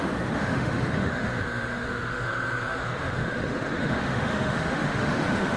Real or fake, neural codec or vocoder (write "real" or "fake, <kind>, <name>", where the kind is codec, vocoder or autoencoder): fake, autoencoder, DAC-VAE